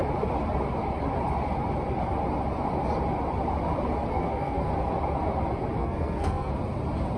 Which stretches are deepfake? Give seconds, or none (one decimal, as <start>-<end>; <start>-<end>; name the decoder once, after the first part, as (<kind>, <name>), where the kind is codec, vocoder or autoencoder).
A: 4.1-4.7 (codec, SNAC); 5.8-6.5